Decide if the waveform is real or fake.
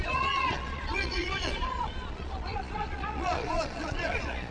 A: fake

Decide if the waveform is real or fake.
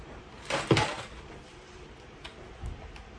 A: fake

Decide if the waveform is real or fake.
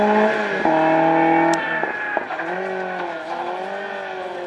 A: real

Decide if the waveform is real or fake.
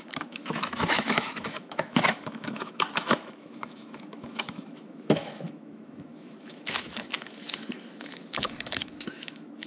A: fake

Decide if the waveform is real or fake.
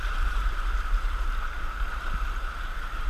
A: fake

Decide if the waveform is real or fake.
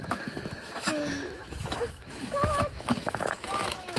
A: fake